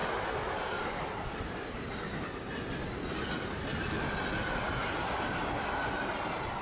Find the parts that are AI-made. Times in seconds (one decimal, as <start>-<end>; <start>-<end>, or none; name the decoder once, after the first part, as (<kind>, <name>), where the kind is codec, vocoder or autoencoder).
none